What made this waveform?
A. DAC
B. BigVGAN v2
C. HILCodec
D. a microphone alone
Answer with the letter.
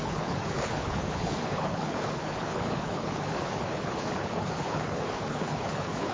C